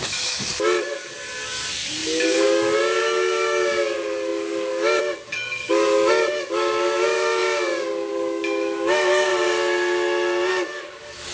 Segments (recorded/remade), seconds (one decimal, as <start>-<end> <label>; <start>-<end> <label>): 0.0-9.3 remade; 9.3-10.5 recorded; 10.5-11.3 remade